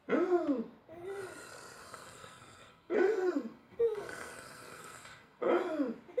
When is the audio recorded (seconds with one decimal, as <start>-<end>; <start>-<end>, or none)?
0.0-1.8; 5.5-6.2